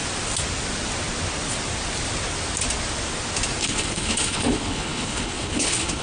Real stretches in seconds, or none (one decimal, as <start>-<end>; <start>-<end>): 0.0-3.6